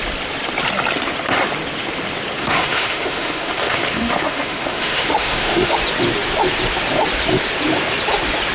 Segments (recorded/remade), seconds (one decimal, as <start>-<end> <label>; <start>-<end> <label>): 0.0-2.4 recorded; 2.4-5.8 remade; 5.8-8.5 recorded